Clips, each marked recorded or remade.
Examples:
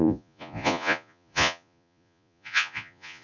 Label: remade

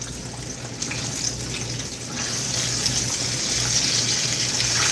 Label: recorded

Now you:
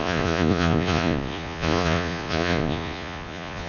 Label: remade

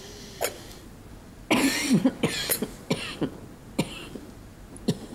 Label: recorded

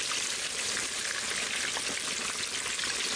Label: recorded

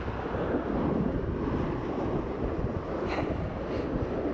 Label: recorded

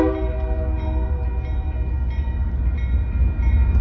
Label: recorded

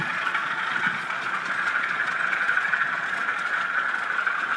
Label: remade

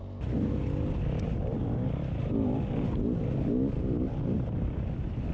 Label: recorded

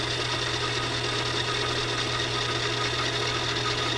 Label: recorded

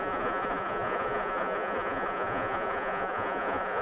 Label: remade